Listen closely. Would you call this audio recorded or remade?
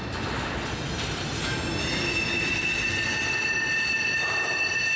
recorded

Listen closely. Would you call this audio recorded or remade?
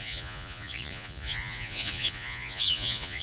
remade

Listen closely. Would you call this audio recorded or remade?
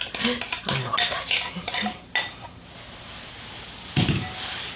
recorded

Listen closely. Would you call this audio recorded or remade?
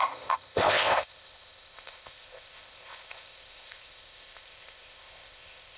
remade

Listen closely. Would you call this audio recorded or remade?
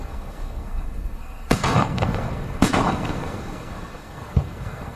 remade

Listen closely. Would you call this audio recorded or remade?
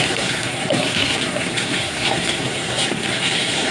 remade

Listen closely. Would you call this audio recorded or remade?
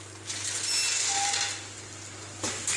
recorded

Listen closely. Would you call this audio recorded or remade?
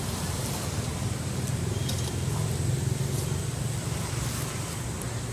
recorded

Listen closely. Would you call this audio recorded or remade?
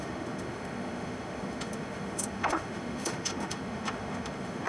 remade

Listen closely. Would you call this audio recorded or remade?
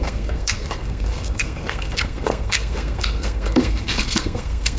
remade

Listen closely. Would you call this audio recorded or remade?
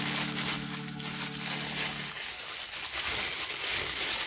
recorded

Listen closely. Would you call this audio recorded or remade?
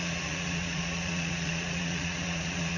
remade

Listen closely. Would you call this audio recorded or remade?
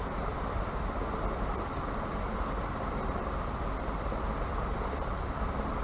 recorded